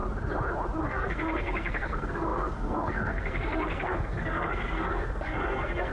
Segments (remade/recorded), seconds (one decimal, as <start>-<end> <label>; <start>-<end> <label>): 0.0-0.8 recorded; 0.8-5.9 remade